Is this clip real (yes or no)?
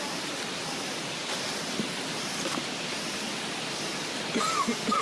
yes